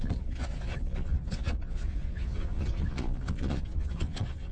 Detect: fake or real fake